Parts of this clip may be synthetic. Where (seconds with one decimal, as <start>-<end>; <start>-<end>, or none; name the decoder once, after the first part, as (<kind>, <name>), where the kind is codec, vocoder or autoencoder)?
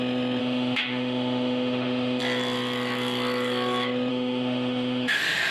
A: 0.4-2.2 (autoencoder, DAC-VAE); 4.1-5.5